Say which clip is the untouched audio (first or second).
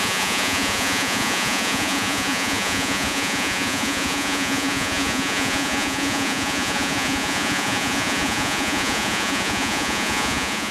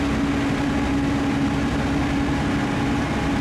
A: second